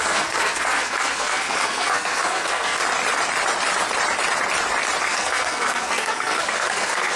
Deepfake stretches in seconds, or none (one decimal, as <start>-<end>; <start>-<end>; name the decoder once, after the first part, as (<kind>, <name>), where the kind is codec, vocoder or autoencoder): 0.0-2.8 (codec, SNAC); 5.0-7.2